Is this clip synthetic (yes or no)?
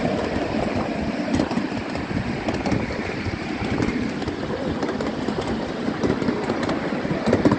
no